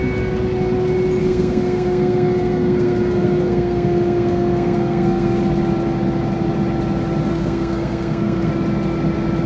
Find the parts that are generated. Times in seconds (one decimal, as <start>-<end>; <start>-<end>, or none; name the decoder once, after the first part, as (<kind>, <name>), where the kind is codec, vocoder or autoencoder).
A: 1.2-5.4 (codec, SNAC); 7.3-8.5